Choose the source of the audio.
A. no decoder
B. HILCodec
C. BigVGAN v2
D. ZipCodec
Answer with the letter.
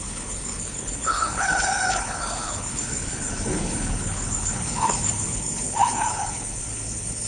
B